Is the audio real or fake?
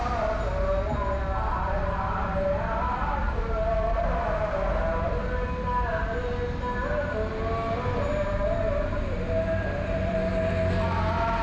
real